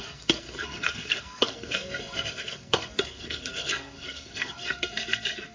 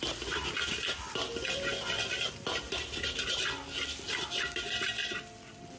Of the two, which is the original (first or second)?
second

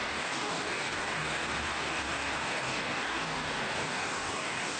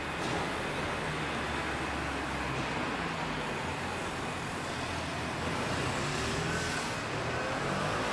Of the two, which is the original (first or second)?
second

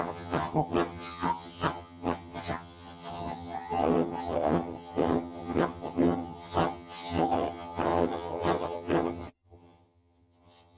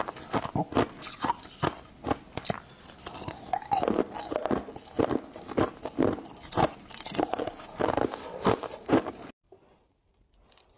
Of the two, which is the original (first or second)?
second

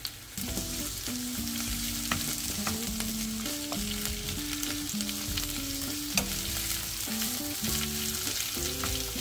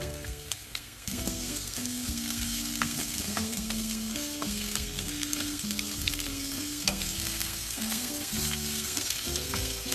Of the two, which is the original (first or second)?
first